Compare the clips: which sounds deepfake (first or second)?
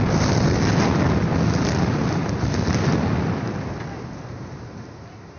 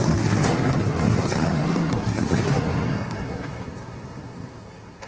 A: second